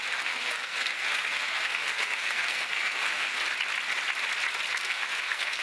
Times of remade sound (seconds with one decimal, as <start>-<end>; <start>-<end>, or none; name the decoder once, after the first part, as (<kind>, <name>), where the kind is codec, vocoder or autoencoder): 0.0-3.4 (codec, SNAC); 4.8-5.6